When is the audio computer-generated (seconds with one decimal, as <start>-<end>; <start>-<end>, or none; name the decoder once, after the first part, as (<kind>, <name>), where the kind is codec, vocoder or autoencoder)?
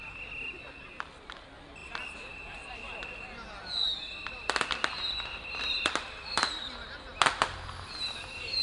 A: none